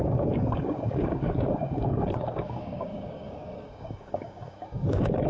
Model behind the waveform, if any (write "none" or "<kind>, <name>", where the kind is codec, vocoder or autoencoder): codec, DAC